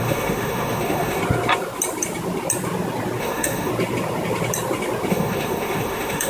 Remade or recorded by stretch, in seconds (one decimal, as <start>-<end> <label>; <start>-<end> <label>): 0.0-1.2 remade; 1.2-3.2 recorded; 3.2-3.7 remade; 3.7-5.1 recorded; 5.1-6.3 remade